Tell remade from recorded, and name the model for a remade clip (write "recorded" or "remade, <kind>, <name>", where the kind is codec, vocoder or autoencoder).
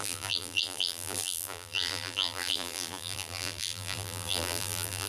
remade, vocoder, BigVGAN v2